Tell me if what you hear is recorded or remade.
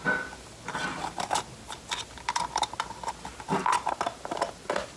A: recorded